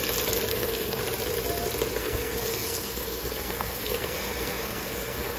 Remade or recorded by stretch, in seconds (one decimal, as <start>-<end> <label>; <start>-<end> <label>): 0.0-0.5 recorded; 0.5-1.0 remade; 1.0-2.0 recorded; 2.0-5.4 remade